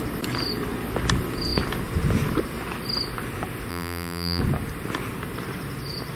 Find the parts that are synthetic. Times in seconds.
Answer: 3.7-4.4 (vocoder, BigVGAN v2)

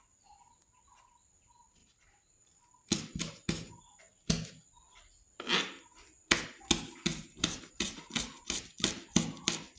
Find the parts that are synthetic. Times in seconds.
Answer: 1.8-4.0 (vocoder, BigVGAN v2); 7.1-7.7

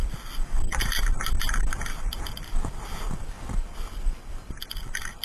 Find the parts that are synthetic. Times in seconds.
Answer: none